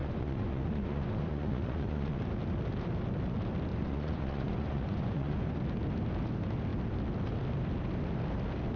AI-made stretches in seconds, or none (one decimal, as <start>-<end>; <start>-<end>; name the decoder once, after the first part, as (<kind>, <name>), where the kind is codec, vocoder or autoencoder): 0.0-2.2 (vocoder, Vocos); 3.7-5.6